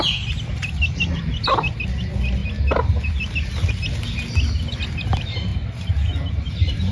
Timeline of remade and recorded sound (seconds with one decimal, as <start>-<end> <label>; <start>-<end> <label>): 0.0-6.9 recorded